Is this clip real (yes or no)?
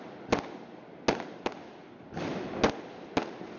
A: yes